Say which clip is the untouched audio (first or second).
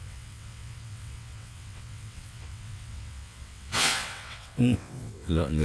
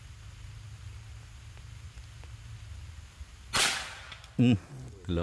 second